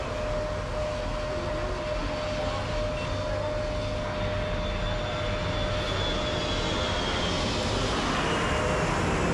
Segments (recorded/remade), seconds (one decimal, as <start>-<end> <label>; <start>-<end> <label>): 0.0-9.3 recorded